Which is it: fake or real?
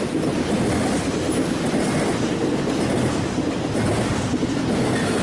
real